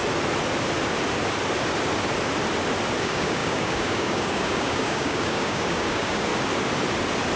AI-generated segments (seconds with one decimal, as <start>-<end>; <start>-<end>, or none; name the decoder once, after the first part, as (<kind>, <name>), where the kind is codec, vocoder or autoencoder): 3.0-6.3 (codec, DAC)